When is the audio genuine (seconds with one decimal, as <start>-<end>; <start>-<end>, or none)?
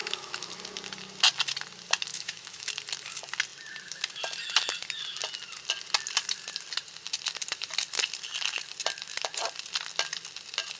0.6-2.1; 2.7-10.8